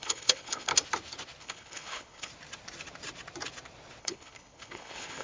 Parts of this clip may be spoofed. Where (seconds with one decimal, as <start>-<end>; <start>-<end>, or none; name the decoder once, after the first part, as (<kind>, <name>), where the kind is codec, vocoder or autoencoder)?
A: 0.0-0.7 (codec, HILCodec); 1.4-2.3; 4.0-5.2